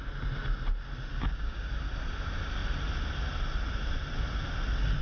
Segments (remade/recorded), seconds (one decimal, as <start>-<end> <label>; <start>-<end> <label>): 0.0-1.1 recorded; 1.1-1.7 remade; 1.7-5.0 recorded